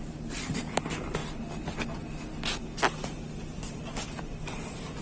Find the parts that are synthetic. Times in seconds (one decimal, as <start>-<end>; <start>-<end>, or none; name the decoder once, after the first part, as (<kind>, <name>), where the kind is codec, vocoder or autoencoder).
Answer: none